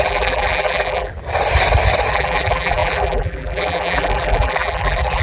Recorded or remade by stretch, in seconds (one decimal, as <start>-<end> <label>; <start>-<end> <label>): 0.0-1.1 remade; 1.1-2.1 recorded; 2.1-5.2 remade